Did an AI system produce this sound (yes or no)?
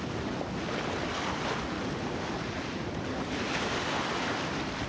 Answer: no